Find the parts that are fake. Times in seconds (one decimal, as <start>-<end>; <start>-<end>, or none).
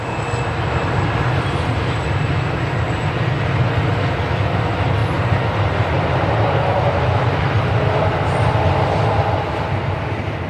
5.0-7.6